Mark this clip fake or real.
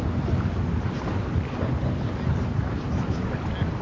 real